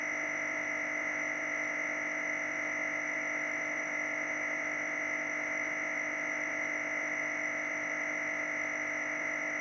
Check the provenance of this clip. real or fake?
real